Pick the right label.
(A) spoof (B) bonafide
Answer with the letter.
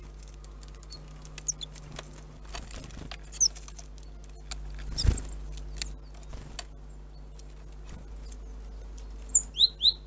B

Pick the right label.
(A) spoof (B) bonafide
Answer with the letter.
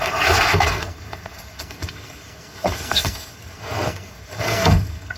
A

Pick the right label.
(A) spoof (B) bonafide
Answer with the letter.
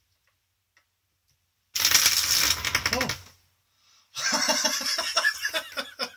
B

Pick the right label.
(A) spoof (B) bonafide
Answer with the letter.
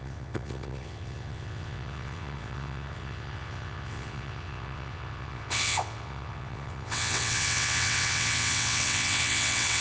A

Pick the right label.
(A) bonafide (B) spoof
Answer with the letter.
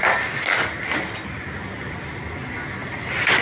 A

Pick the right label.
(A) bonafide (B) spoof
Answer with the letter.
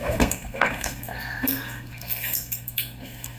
B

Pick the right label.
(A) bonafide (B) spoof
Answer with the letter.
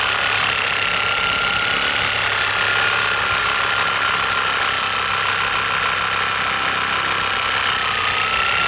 A